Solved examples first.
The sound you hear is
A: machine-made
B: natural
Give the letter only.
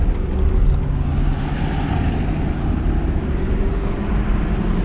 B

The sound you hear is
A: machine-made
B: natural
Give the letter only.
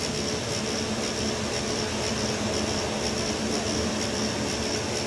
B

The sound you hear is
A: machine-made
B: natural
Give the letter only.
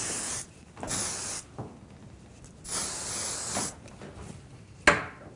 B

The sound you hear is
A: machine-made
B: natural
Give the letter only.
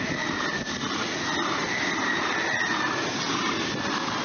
B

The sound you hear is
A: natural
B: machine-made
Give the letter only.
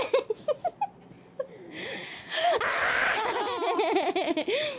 A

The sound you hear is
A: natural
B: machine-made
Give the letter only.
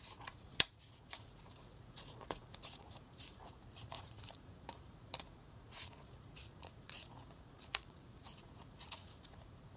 B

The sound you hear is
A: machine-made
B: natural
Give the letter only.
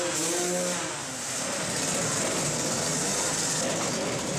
B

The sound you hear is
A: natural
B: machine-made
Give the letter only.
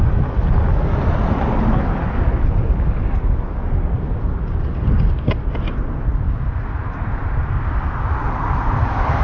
A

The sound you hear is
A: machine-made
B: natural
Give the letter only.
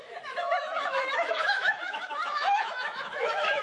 A